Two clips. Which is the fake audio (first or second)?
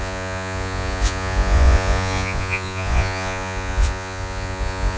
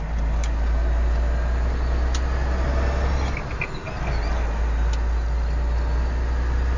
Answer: first